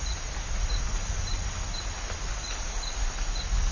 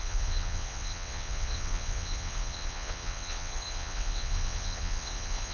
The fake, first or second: second